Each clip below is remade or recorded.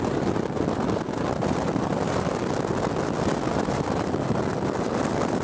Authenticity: recorded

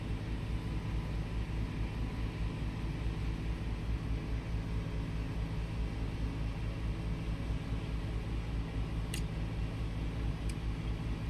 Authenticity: recorded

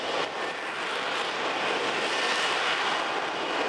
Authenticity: recorded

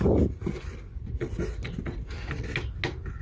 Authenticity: recorded